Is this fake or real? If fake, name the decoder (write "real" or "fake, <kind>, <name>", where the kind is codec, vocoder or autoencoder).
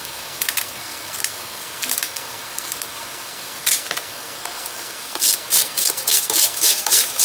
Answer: fake, codec, SNAC